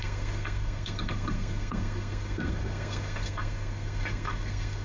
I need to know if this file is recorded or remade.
remade